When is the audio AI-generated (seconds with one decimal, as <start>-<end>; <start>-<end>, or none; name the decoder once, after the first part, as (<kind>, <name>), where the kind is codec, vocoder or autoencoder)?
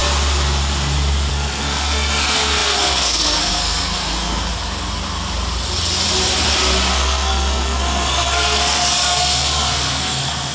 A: 1.3-4.5 (codec, SNAC); 6.9-10.5